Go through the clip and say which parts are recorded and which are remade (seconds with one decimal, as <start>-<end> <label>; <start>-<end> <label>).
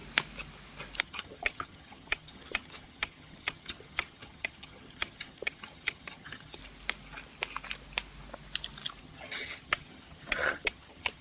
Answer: 0.0-1.0 recorded; 1.0-6.6 remade; 6.6-9.0 recorded; 9.0-11.2 remade